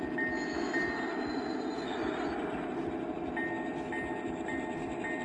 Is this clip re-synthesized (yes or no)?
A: no